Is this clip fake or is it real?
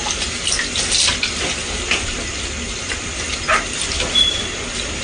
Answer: real